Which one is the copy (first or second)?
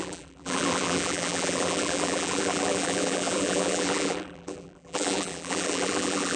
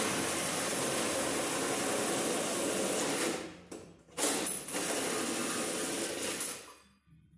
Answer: first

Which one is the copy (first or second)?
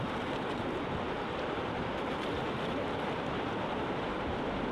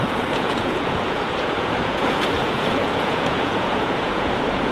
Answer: second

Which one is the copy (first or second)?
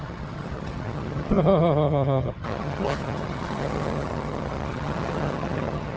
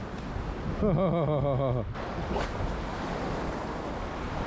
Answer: first